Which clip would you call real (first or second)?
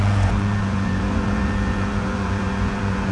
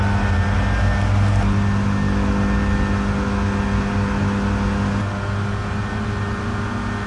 second